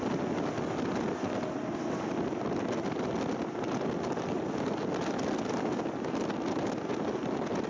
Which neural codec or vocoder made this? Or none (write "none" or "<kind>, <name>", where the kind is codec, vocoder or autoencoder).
none